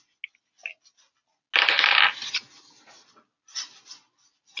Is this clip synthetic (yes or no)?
no